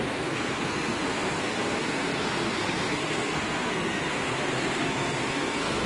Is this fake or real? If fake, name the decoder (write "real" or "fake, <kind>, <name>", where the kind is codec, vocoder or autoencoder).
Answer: fake, codec, SNAC